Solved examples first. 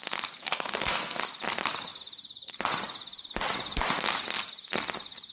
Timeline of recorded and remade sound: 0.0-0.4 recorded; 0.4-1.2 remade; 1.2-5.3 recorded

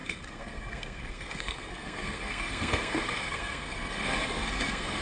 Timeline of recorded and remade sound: 0.0-5.0 remade